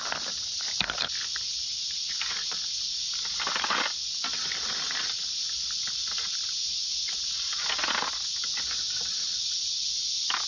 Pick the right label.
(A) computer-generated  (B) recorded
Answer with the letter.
B